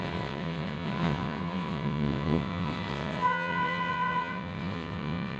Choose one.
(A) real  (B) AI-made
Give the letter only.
B